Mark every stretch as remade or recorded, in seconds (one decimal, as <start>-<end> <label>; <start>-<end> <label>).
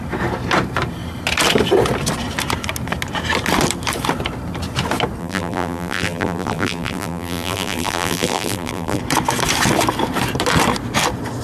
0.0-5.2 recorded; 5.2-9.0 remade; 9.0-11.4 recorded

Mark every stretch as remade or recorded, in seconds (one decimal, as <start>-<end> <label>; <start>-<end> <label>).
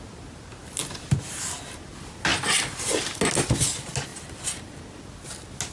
0.0-4.1 recorded; 4.1-4.8 remade; 4.8-5.7 recorded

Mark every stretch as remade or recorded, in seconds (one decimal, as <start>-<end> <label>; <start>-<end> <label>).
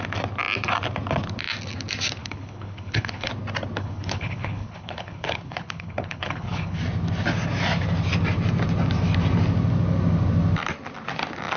0.0-2.2 recorded; 2.2-3.3 remade; 3.3-3.8 recorded; 3.8-6.8 remade; 6.8-11.6 recorded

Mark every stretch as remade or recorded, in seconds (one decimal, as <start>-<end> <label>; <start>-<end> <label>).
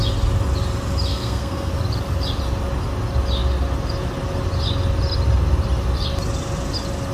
0.0-1.1 recorded; 1.1-1.7 remade; 1.7-7.1 recorded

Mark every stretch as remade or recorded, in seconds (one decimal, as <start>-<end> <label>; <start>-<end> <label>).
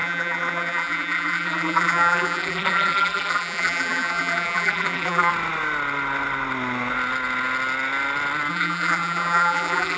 0.0-5.3 remade; 5.3-8.5 recorded; 8.5-10.0 remade